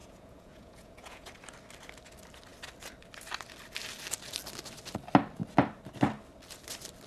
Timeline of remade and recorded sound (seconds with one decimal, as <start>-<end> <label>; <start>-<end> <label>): 0.0-1.3 remade; 1.3-7.1 recorded